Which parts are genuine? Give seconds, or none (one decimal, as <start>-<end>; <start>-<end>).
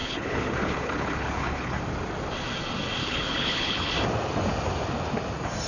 1.8-3.0; 3.9-5.7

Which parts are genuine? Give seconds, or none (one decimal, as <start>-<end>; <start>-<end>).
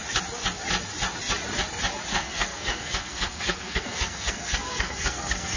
0.0-2.1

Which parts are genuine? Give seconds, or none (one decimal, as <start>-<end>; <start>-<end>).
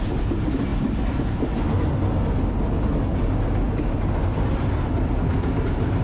0.0-6.0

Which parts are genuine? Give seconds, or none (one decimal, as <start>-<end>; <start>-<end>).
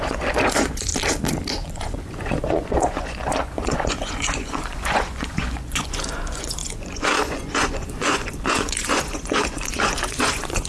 0.9-1.7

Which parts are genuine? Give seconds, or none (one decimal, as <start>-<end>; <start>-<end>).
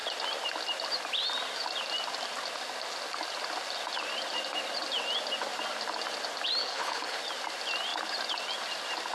0.0-6.6; 7.2-9.1